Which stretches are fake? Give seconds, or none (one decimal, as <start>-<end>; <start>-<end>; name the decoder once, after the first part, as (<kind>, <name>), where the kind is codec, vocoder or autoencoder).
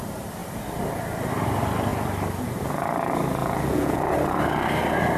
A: 3.4-4.0 (vocoder, Vocos)